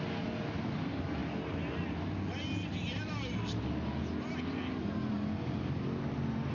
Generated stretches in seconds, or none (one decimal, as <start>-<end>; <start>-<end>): none